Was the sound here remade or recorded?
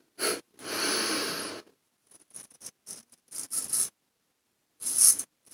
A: recorded